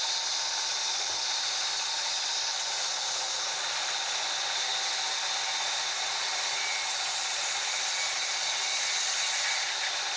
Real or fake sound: real